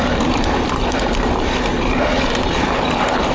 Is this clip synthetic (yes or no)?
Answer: no